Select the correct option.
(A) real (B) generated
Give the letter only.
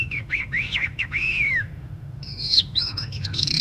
B